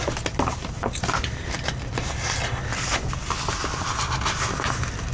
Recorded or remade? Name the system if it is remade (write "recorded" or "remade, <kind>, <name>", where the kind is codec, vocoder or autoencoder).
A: recorded